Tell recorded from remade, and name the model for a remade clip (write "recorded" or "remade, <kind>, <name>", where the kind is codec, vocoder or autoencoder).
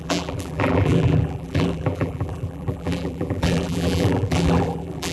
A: remade, vocoder, BigVGAN v2